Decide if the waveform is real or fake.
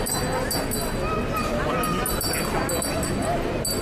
real